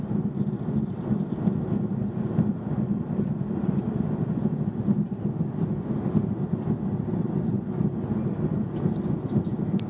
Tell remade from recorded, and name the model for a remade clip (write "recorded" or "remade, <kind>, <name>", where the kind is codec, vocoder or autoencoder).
recorded